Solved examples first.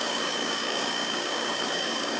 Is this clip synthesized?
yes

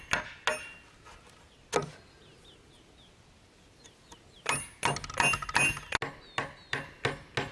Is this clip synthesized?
no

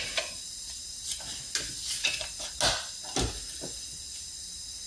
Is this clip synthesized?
no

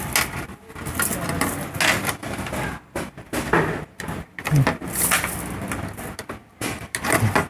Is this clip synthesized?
no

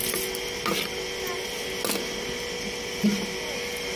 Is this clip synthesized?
no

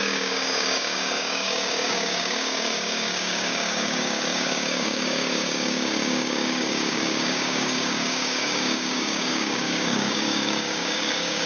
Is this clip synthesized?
yes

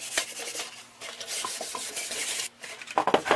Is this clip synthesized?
no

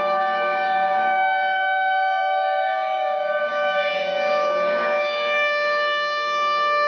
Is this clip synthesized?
yes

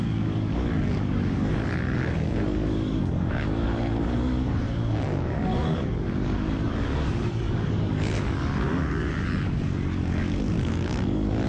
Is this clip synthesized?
yes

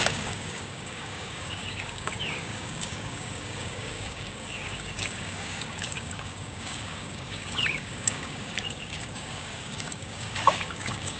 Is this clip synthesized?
yes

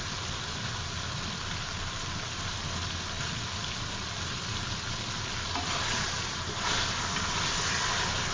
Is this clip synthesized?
no